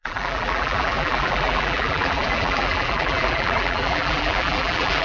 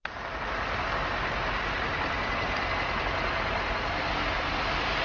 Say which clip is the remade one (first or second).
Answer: first